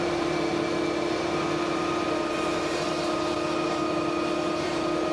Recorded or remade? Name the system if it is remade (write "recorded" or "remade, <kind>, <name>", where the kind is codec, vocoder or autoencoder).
remade, vocoder, BigVGAN v2